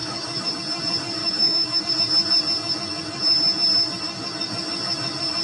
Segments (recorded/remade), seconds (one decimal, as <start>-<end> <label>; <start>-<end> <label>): 0.0-0.5 remade; 0.5-1.2 recorded; 1.2-1.8 remade; 1.8-5.4 recorded